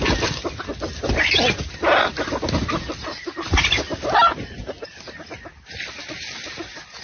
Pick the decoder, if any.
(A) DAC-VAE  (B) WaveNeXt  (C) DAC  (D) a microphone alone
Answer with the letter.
D